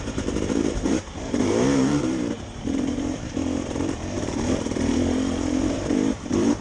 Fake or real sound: fake